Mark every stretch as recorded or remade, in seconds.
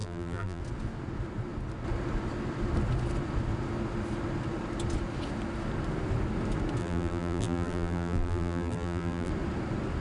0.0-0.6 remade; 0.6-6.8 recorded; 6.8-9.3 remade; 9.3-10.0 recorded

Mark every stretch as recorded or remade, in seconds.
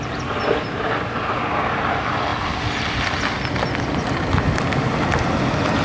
0.0-5.8 recorded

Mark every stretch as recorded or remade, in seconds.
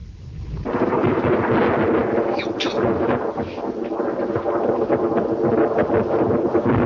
0.0-1.3 remade; 1.3-6.9 recorded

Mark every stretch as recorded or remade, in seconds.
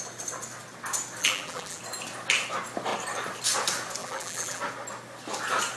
0.0-1.2 recorded; 1.2-1.8 remade; 1.8-4.0 recorded; 4.0-4.6 remade; 4.6-5.8 recorded